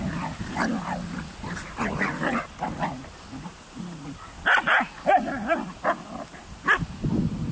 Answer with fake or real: real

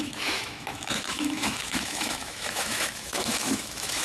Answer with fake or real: fake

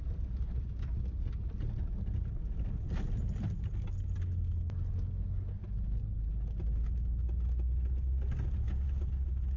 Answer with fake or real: real